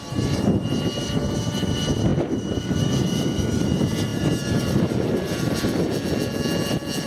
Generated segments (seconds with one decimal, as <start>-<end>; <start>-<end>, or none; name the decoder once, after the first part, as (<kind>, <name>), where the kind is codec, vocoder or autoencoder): none